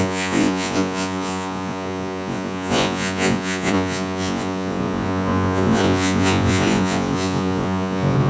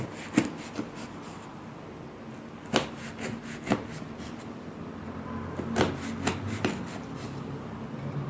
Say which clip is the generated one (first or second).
first